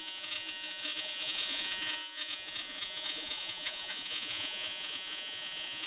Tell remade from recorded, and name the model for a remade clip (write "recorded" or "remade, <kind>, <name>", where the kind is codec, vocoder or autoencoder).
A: remade, vocoder, Vocos